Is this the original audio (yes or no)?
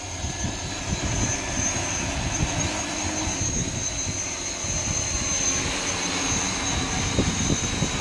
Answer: yes